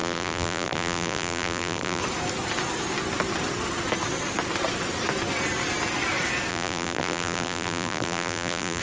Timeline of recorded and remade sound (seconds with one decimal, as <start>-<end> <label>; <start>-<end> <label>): 0.0-2.0 remade; 2.0-6.5 recorded; 6.5-8.8 remade